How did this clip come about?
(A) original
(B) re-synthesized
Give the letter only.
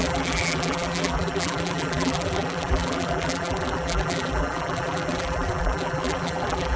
B